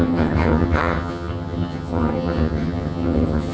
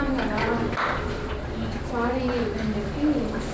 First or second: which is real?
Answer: second